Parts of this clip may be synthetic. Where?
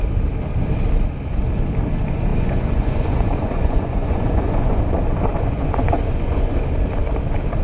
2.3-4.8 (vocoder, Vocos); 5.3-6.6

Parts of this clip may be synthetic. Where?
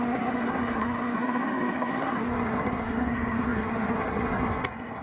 0.0-5.0 (codec, SNAC)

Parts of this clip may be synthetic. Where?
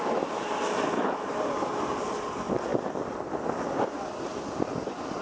none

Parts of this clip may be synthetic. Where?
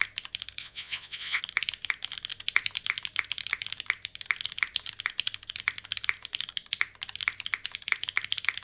0.6-1.4 (vocoder, Vocos)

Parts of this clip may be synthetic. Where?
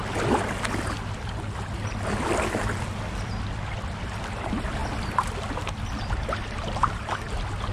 none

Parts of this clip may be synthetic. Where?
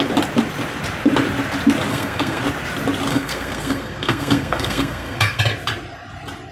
1.9-2.4 (codec, SNAC); 3.1-5.4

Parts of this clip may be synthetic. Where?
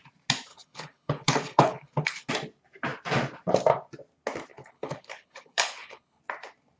0.5-2.3 (codec, HILCodec); 4.5-6.2